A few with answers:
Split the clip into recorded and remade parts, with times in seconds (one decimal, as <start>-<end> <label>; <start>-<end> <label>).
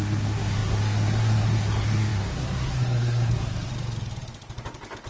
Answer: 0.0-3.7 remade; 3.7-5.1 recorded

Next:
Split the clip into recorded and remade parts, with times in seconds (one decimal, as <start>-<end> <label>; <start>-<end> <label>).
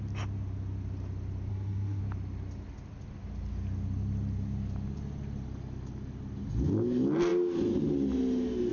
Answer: 0.0-1.5 recorded; 1.5-2.0 remade; 2.0-8.7 recorded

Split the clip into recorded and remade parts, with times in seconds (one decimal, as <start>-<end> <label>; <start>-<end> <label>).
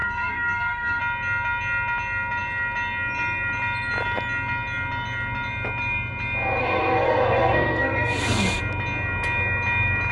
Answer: 0.0-1.0 remade; 1.0-6.6 recorded; 6.6-8.6 remade; 8.6-10.1 recorded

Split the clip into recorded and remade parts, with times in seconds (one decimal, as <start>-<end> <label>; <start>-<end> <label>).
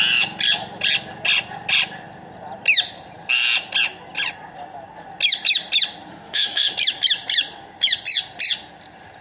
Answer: 0.0-6.1 recorded; 6.1-6.7 remade; 6.7-9.2 recorded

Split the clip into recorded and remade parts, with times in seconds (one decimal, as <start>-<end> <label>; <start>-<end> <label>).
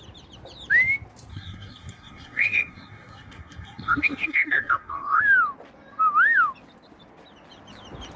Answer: 0.0-1.3 recorded; 1.3-5.2 remade; 5.2-8.2 recorded